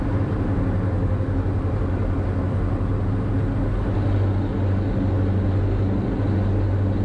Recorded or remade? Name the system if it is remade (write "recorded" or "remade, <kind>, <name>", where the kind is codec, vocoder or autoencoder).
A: recorded